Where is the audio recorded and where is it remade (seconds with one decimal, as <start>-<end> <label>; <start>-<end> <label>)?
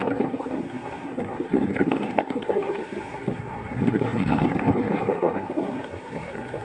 0.0-6.6 remade